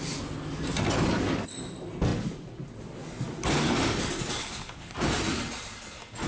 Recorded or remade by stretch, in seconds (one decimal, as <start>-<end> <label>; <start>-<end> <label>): 0.0-4.4 recorded; 4.4-4.9 remade; 4.9-6.3 recorded